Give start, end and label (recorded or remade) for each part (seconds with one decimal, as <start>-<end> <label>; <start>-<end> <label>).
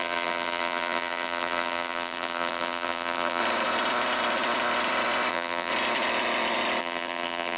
0.0-3.4 remade; 3.4-5.3 recorded; 5.3-5.7 remade; 5.7-6.8 recorded; 6.8-7.6 remade